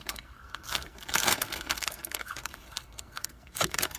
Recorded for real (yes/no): no